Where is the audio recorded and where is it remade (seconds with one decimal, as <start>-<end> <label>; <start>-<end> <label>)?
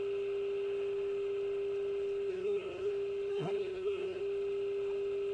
0.0-2.3 recorded; 2.3-2.9 remade; 2.9-3.3 recorded; 3.3-4.2 remade; 4.2-5.3 recorded